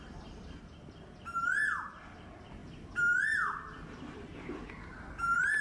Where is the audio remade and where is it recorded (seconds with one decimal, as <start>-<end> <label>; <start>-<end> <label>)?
0.0-5.6 remade